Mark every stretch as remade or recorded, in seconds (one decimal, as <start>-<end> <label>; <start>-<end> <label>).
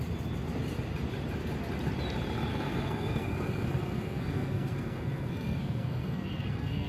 0.0-2.5 recorded; 2.5-6.9 remade